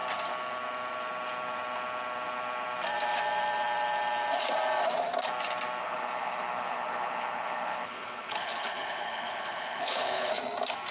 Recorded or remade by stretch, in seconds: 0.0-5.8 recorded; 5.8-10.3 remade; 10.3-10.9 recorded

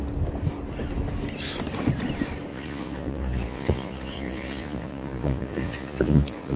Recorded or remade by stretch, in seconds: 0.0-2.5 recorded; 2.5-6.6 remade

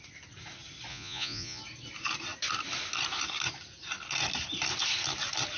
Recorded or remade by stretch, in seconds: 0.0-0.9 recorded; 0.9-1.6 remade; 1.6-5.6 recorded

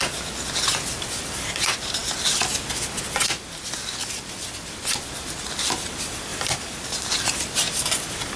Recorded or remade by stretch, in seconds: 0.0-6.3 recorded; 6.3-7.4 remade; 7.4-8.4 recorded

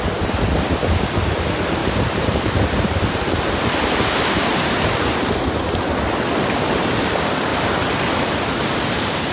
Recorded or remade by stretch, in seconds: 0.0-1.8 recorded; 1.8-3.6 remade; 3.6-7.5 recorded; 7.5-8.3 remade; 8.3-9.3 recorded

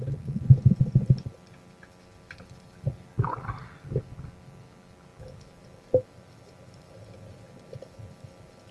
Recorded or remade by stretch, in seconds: 0.0-8.7 recorded

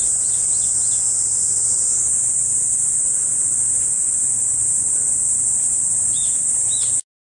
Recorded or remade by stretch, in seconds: 0.0-7.2 recorded

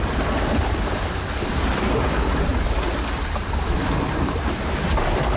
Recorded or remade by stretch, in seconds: 0.0-2.5 remade; 2.5-3.1 recorded; 3.1-5.4 remade